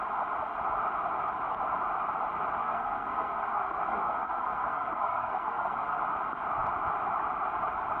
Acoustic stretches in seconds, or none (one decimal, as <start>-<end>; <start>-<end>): 0.0-2.6; 6.0-8.0